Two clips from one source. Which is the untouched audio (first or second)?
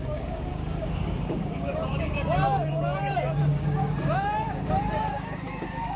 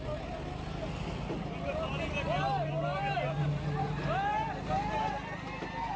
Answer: second